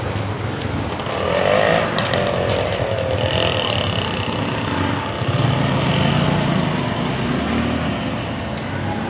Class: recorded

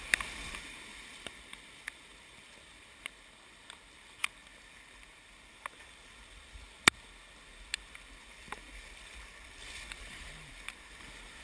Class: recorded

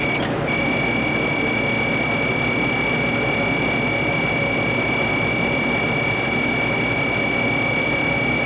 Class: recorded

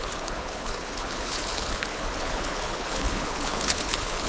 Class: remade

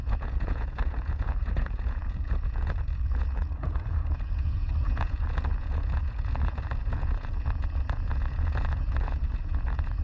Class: remade